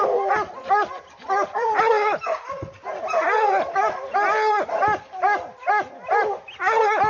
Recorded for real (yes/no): yes